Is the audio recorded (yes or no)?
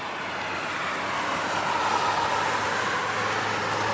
yes